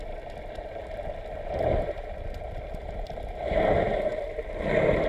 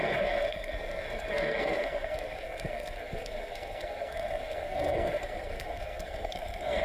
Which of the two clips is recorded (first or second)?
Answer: first